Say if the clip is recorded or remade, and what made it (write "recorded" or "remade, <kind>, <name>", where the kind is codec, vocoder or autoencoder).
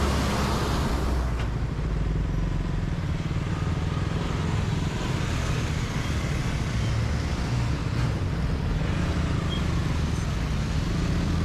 recorded